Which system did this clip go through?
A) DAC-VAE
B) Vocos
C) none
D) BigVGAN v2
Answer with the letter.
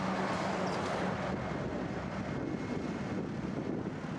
C